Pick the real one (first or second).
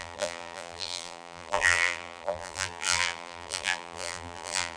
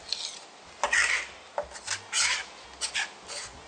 second